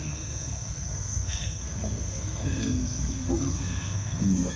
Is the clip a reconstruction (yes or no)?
yes